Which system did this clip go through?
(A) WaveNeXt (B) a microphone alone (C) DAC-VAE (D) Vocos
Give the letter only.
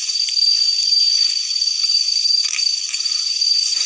B